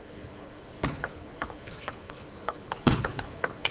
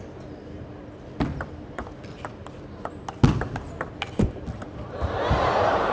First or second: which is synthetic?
first